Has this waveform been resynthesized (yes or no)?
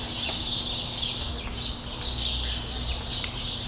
no